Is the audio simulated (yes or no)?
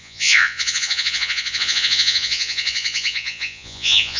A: yes